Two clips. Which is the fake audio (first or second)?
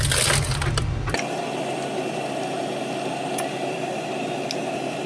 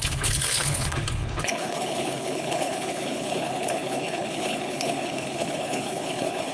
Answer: second